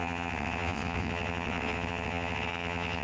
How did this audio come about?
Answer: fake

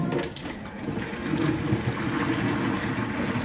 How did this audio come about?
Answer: real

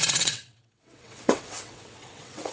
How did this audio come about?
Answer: fake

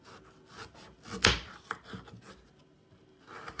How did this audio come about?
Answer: real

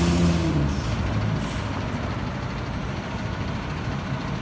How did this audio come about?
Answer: real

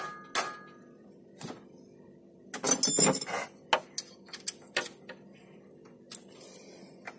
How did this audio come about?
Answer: real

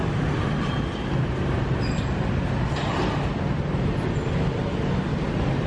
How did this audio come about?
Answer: real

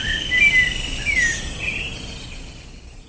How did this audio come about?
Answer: real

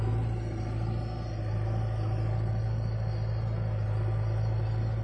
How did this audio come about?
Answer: real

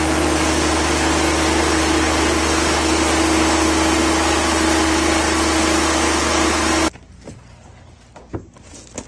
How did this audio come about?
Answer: real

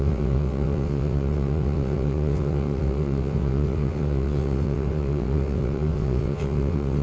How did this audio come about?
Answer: fake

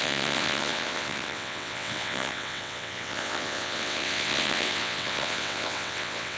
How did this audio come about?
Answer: fake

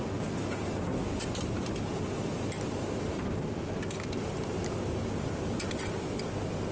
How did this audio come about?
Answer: real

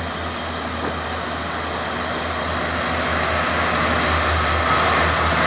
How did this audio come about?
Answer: real